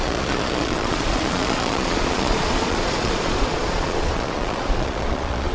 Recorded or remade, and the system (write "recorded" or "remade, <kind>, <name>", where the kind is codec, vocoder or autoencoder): remade, vocoder, Vocos